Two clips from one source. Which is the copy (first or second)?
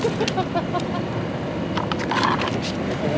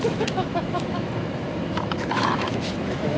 second